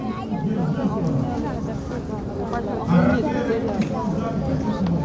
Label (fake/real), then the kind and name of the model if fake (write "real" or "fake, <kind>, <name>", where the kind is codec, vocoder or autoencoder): real